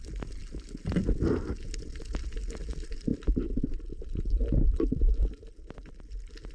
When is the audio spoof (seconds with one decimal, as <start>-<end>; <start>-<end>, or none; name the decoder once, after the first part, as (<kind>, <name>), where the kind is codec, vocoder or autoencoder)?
3.1-6.0 (vocoder, BigVGAN v2)

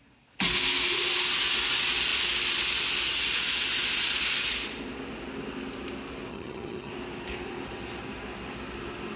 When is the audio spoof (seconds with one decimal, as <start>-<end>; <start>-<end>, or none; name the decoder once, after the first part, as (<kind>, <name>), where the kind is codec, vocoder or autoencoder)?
6.3-6.9 (vocoder, HiFi-GAN)

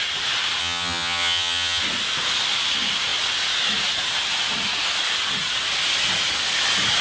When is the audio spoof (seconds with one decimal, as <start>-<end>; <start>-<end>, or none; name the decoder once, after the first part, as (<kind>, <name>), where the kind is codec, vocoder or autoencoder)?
0.6-1.8 (vocoder, HiFi-GAN)

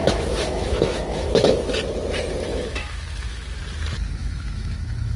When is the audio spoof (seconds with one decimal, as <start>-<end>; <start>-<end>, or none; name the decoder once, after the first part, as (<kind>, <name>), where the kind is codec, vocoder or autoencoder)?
0.0-1.7 (autoencoder, DAC-VAE); 2.5-3.6; 4.2-5.2

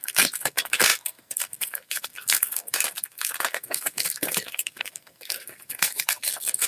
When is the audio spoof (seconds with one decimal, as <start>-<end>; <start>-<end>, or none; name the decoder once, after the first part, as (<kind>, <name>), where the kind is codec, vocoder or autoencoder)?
0.0-6.7 (codec, SNAC)